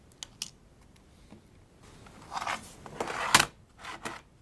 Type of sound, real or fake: real